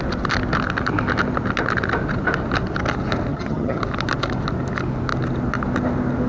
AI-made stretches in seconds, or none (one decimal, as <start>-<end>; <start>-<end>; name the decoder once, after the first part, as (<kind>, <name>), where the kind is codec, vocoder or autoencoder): 3.3-3.8 (vocoder, HiFi-GAN)